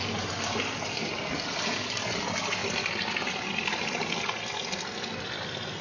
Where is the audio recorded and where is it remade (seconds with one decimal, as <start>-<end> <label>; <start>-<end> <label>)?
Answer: 0.0-5.8 recorded